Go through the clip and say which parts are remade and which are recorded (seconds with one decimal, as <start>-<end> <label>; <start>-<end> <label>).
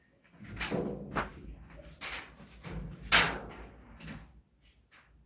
0.0-5.3 recorded